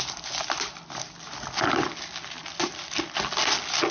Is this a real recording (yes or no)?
yes